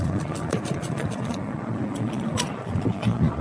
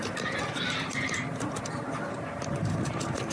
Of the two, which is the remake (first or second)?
first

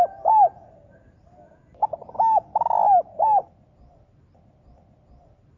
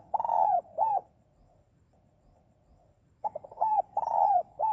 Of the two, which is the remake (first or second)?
second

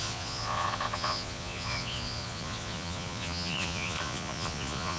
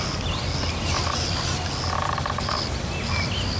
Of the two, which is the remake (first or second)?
first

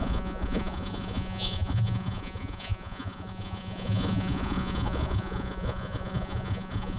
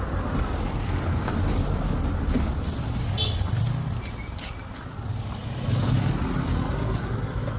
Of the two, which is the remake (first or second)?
first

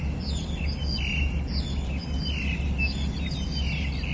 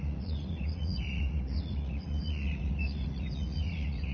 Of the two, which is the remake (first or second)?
second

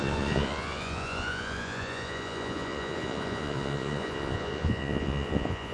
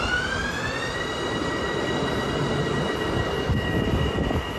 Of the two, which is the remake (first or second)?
first